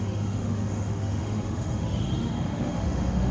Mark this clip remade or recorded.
remade